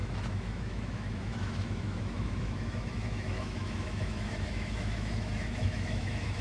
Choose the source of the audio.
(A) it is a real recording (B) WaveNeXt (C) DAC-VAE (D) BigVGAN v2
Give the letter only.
C